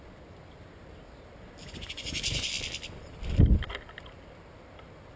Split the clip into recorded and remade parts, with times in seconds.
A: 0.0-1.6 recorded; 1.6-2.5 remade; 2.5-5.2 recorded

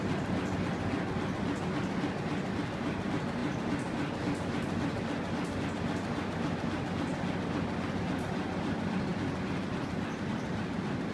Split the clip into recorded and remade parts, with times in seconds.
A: 0.0-11.1 recorded

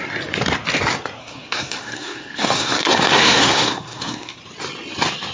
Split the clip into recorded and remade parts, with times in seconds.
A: 0.0-1.2 recorded; 1.2-4.4 remade; 4.4-5.3 recorded

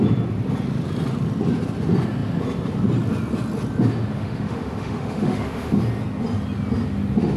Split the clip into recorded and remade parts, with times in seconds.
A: 0.0-4.1 recorded; 4.1-5.8 remade; 5.8-7.4 recorded

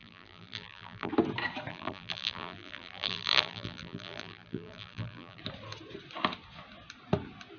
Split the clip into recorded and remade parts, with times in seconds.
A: 0.0-1.1 remade; 1.1-1.7 recorded; 1.7-5.4 remade; 5.4-7.6 recorded